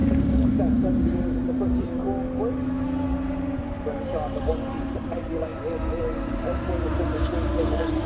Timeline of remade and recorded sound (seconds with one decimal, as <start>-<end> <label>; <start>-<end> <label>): 0.0-2.0 remade; 2.0-3.7 recorded; 3.7-5.5 remade; 5.5-6.0 recorded; 6.0-8.1 remade